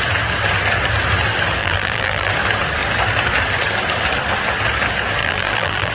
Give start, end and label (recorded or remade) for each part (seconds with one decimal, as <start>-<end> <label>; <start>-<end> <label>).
0.0-1.6 recorded; 1.6-2.3 remade; 2.3-5.2 recorded; 5.2-5.9 remade

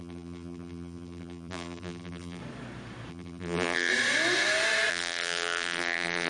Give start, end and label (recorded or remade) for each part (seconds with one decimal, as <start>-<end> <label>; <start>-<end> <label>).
0.0-2.4 remade; 2.4-3.1 recorded; 3.1-3.9 remade; 3.9-4.9 recorded; 4.9-6.3 remade